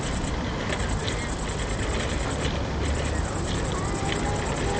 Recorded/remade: recorded